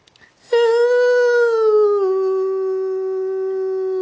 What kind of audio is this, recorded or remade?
recorded